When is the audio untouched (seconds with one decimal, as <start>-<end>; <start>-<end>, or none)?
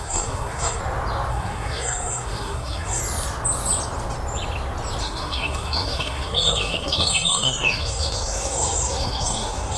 0.8-1.3; 3.0-5.0